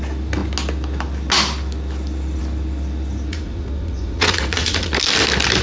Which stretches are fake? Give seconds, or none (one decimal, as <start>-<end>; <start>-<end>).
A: 3.3-4.9